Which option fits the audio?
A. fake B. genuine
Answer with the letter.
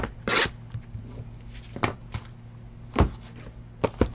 B